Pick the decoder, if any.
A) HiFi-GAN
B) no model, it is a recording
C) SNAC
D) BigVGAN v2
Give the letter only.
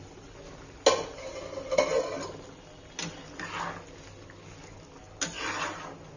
B